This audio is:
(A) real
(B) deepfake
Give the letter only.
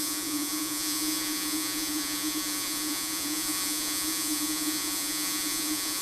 B